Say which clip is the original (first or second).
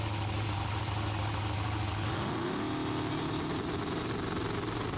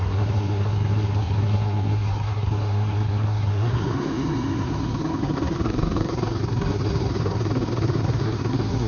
first